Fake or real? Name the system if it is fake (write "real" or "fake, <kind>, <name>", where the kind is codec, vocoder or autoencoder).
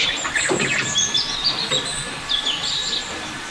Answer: fake, vocoder, BigVGAN v2